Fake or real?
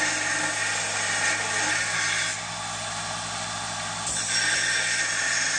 real